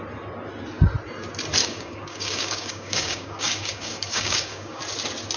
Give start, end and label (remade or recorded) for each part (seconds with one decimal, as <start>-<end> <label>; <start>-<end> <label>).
0.0-1.6 recorded; 1.6-4.8 remade; 4.8-5.4 recorded